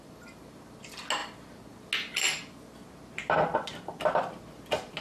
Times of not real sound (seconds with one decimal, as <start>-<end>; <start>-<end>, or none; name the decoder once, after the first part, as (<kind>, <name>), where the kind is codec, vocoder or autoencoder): none